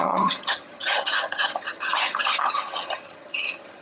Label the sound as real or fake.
fake